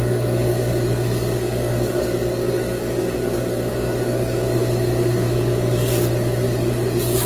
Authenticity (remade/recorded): remade